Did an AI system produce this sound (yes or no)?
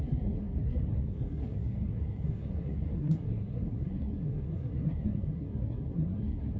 yes